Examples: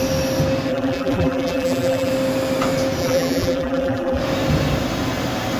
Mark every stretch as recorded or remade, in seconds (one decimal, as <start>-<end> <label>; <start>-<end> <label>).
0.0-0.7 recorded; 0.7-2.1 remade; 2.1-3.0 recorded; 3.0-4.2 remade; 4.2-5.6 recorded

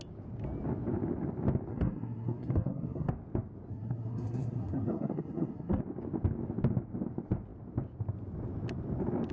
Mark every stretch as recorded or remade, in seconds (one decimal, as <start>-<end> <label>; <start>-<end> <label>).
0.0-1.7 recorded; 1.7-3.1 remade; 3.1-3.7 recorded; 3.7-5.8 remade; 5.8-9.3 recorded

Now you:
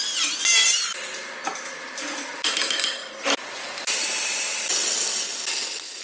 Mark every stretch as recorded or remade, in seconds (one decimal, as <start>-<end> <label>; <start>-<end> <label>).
0.0-6.0 recorded

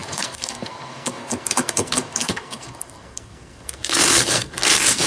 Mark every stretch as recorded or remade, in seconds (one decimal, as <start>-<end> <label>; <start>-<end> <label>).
0.0-5.1 remade

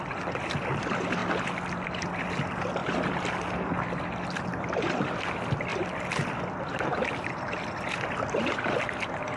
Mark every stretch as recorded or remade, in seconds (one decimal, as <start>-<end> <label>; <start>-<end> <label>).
0.0-9.4 recorded

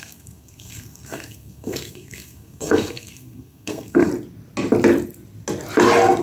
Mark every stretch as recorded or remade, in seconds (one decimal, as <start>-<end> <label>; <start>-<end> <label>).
0.0-4.1 remade; 4.1-6.2 recorded